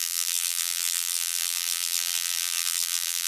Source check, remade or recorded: remade